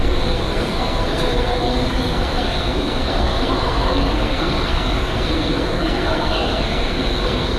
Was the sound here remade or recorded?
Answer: remade